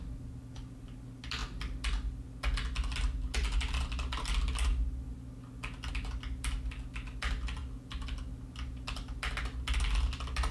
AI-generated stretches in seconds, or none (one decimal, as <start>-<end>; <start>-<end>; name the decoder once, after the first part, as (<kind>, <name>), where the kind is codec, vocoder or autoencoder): none